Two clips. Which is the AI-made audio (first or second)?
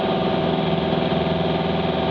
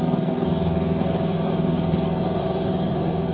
second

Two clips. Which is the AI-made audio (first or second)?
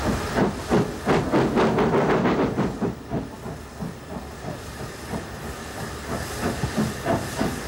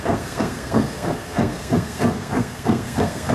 second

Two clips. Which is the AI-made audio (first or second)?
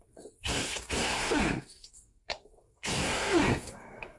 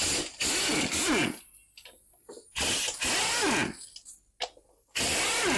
first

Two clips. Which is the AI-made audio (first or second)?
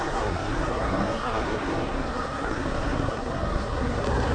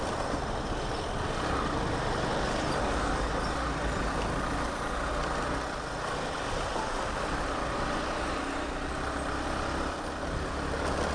first